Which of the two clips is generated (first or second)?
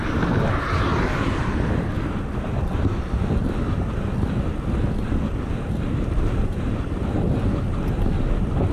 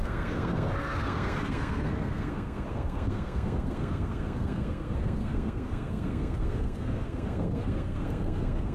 second